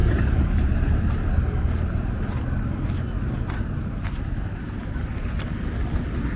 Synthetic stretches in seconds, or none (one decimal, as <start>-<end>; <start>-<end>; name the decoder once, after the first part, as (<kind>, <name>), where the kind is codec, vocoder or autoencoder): none